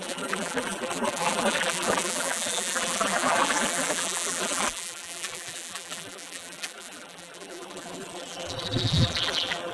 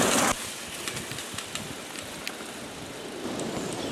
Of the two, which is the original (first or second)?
second